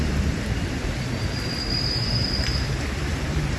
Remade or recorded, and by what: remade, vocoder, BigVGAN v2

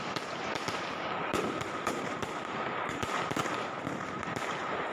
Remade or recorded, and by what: recorded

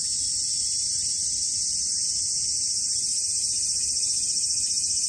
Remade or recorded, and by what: recorded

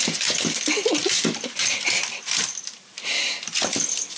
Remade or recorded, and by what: remade, vocoder, BigVGAN v2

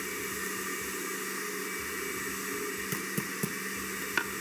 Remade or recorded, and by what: recorded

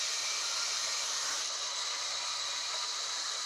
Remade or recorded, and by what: remade, vocoder, BigVGAN v2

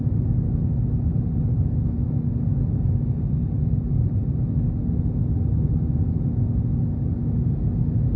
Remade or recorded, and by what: recorded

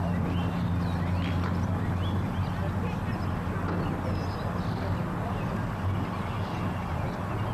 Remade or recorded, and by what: recorded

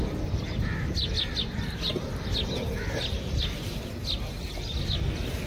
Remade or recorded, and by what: recorded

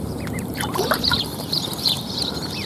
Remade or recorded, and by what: remade, vocoder, BigVGAN v2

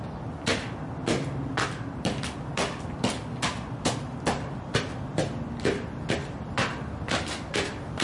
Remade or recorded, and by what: remade, vocoder, BigVGAN v2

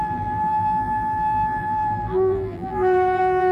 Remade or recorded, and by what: remade, vocoder, BigVGAN v2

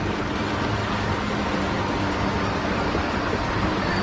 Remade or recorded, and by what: recorded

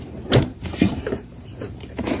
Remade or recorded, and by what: remade, vocoder, BigVGAN v2